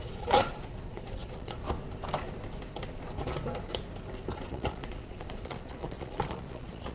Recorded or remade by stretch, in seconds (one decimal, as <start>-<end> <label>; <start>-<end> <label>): 0.0-1.6 remade; 1.6-4.3 recorded; 4.3-6.9 remade